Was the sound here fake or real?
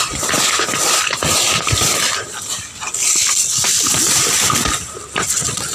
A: real